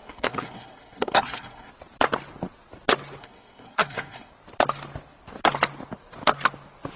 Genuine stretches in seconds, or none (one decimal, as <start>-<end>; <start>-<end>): 1.7-3.2; 4.3-7.0